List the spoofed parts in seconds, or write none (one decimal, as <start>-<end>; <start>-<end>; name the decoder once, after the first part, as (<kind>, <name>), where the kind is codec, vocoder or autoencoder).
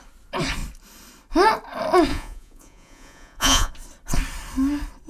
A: 2.1-3.7 (vocoder, Vocos)